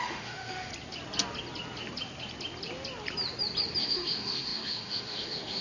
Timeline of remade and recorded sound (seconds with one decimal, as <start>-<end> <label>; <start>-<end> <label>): 0.0-0.7 remade; 0.7-3.8 recorded; 3.8-5.6 remade